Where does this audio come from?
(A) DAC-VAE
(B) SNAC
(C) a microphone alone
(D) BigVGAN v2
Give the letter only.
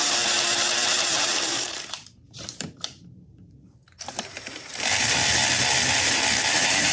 D